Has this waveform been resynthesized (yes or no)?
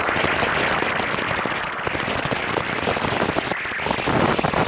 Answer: no